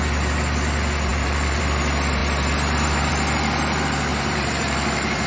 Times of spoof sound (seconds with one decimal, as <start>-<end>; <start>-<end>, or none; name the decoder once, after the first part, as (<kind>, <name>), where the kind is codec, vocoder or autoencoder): 1.1-1.6 (vocoder, BigVGAN v2); 4.1-5.3